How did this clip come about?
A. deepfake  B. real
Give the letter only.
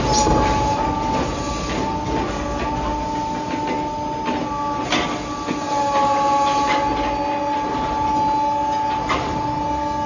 B